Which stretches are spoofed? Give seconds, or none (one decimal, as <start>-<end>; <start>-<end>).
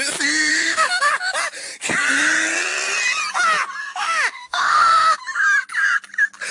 0.5-1.1; 3.8-5.2